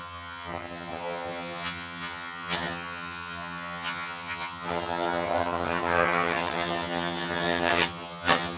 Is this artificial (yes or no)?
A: yes